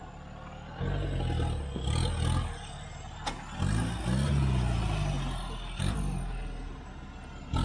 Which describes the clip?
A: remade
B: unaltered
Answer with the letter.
B